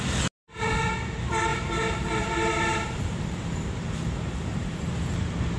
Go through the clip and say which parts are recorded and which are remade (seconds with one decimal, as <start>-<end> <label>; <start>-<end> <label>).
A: 0.0-1.5 recorded; 1.5-4.9 remade; 4.9-5.6 recorded